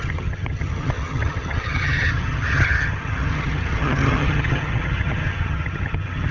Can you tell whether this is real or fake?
fake